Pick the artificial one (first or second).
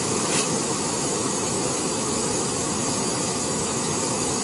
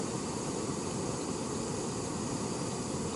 first